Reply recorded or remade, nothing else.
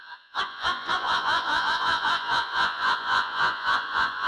remade